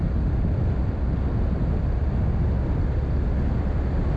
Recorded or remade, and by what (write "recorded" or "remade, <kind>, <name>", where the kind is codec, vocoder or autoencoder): recorded